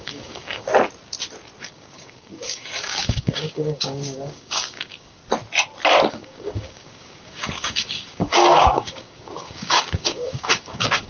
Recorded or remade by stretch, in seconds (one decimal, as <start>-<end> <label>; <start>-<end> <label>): 0.0-0.7 remade; 0.7-1.6 recorded; 1.6-5.2 remade; 5.2-6.1 recorded; 6.1-11.1 remade